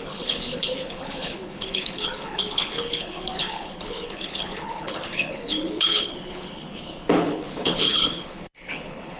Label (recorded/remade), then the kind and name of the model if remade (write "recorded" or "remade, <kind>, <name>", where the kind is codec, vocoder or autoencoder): remade, codec, HILCodec